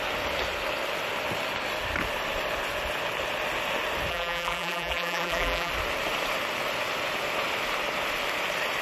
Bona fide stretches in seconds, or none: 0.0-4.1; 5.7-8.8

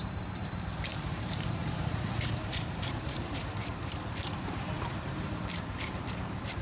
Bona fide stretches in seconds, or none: none

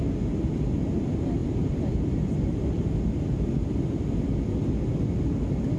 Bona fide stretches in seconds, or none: 0.0-1.4; 4.3-5.8

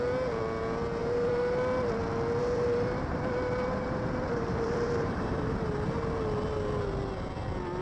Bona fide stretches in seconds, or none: 0.0-1.0; 1.6-2.4; 5.7-7.8